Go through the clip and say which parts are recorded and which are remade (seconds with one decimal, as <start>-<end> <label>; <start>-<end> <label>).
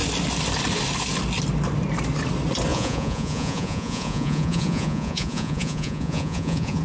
0.0-2.7 recorded; 2.7-6.8 remade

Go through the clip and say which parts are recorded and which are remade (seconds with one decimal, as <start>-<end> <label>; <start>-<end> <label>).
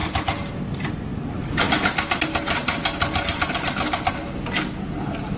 0.0-0.5 remade; 0.5-5.4 recorded